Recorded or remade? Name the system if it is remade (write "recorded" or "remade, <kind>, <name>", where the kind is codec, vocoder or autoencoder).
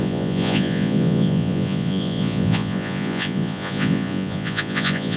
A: remade, vocoder, Vocos